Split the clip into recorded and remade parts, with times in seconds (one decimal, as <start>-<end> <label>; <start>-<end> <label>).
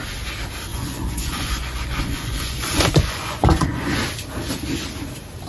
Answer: 0.0-0.7 recorded; 0.7-3.9 remade; 3.9-5.5 recorded